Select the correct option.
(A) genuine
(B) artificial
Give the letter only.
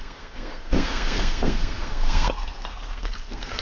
B